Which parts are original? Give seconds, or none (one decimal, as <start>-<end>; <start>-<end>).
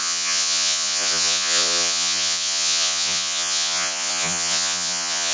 none